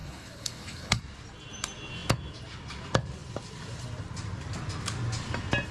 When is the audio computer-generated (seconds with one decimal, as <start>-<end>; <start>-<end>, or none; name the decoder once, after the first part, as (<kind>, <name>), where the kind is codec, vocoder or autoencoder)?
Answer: 0.0-1.0 (codec, HILCodec)